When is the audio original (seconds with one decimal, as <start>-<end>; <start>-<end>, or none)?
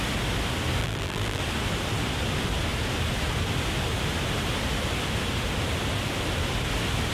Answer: 0.0-0.8; 1.4-7.1